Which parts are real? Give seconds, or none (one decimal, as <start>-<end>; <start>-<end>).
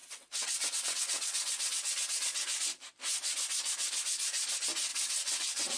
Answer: 2.6-4.9